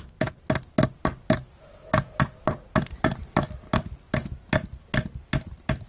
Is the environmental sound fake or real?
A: real